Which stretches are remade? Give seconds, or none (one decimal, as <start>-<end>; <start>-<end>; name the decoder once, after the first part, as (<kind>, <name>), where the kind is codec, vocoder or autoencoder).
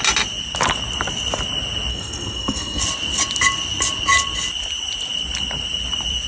1.9-2.8 (codec, SNAC)